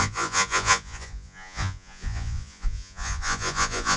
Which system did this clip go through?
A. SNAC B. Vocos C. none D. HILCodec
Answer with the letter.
B